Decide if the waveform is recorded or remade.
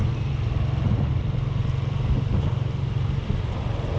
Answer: recorded